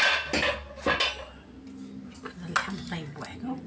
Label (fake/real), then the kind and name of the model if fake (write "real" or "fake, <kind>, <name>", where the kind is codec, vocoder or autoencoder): real